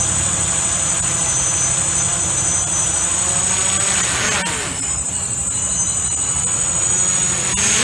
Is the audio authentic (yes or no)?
yes